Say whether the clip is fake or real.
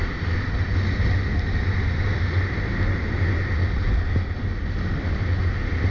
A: real